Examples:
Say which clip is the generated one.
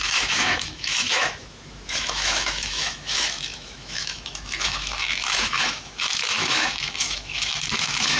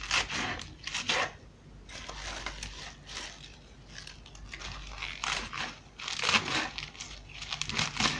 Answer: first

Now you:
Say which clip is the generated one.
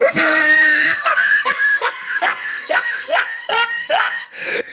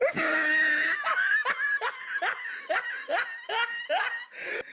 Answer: first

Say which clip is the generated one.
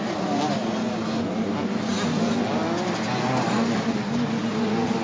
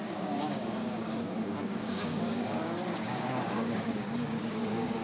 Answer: second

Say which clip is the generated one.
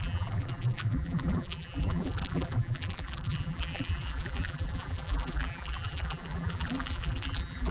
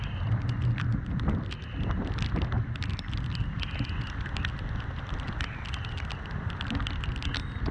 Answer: first